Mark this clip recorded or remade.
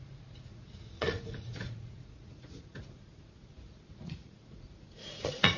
remade